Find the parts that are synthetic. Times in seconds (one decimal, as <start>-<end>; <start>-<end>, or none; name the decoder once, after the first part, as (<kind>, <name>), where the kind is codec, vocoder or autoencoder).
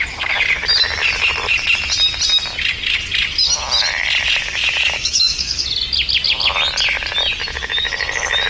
4.4-5.6 (autoencoder, DAC-VAE)